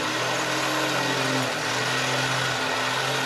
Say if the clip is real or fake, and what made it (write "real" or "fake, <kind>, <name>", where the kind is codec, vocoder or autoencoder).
real